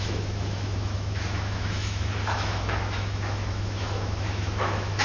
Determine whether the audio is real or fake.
fake